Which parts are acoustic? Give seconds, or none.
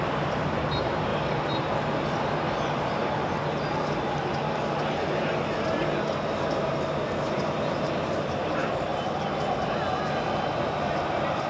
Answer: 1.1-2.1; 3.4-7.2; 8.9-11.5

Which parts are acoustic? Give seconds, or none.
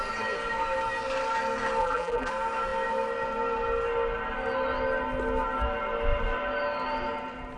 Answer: 0.0-1.8; 2.3-7.6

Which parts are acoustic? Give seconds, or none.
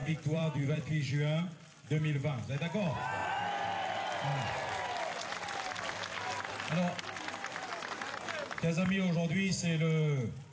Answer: 1.6-3.2; 3.9-10.5